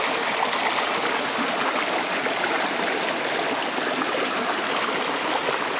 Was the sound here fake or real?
real